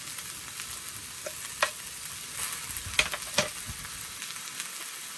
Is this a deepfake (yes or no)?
no